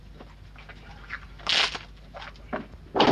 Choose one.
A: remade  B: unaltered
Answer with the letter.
B